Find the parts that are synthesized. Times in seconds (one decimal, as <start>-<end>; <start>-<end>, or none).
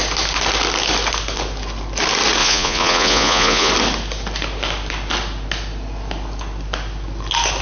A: 2.4-3.7